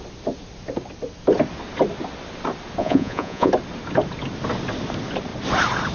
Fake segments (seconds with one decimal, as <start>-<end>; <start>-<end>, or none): 2.8-3.5